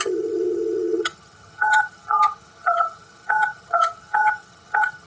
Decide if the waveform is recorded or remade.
remade